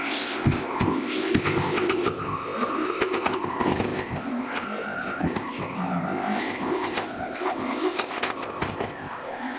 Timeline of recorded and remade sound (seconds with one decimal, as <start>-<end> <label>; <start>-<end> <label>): 0.0-9.6 remade

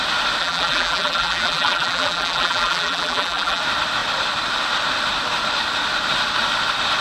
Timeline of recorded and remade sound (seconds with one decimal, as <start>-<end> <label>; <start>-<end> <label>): 0.0-0.4 recorded; 0.4-3.6 remade; 3.6-7.0 recorded

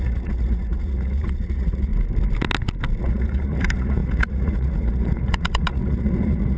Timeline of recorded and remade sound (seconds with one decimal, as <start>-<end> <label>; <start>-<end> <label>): 0.0-1.9 remade; 1.9-3.0 recorded; 3.0-6.6 remade